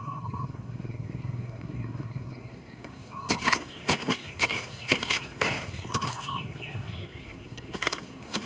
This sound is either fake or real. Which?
fake